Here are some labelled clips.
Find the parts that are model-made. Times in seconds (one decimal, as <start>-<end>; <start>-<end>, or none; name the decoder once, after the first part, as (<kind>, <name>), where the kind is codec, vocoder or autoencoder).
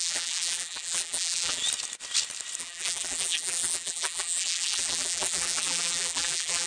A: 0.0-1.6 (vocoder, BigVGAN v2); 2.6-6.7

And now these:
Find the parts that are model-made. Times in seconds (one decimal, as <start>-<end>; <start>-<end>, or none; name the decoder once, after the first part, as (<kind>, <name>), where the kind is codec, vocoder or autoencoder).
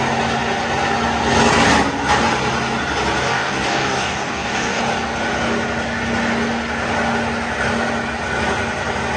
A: 3.3-4.8 (codec, DAC)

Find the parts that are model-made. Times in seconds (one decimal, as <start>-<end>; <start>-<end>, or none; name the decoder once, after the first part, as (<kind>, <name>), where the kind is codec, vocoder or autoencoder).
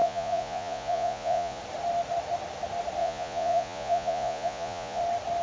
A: 0.0-1.6 (vocoder, Vocos); 3.0-5.0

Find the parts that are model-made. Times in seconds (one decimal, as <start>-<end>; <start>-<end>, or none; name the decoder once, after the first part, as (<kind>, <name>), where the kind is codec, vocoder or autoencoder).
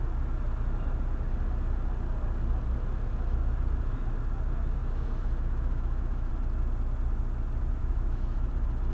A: 4.8-6.3 (autoencoder, DAC-VAE); 7.8-8.5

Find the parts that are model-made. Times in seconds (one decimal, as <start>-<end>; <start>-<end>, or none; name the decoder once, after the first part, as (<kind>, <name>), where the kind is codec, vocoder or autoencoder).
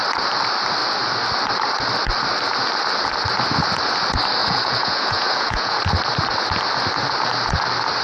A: 4.4-5.8 (vocoder, Vocos)